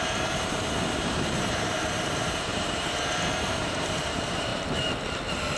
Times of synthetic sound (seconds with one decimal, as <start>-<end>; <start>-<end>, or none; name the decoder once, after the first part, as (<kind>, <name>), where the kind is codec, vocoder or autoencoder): 0.0-4.5 (vocoder, BigVGAN v2)